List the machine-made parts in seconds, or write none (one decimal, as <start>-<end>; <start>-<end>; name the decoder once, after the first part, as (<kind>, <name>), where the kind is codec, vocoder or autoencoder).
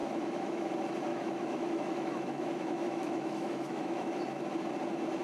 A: 0.0-0.7 (autoencoder, DAC-VAE); 1.1-4.2